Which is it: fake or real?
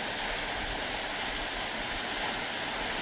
real